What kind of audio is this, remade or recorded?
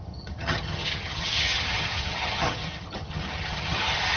remade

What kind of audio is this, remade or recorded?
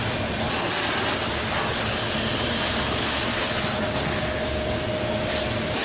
recorded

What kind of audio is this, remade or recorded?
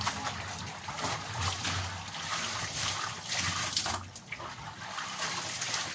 recorded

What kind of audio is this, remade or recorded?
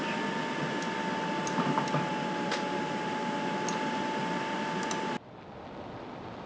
recorded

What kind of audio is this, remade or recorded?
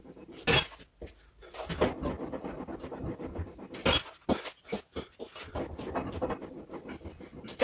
recorded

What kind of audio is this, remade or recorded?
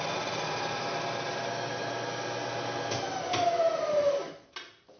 recorded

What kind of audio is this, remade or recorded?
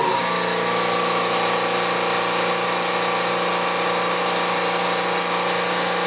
recorded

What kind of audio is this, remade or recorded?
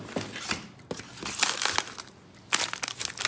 recorded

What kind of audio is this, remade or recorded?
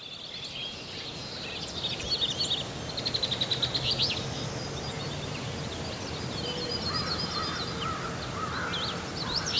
recorded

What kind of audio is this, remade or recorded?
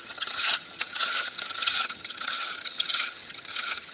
remade